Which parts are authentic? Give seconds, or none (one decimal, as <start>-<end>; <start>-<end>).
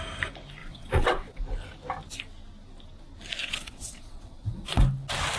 0.0-0.6; 1.4-3.4; 4.8-5.4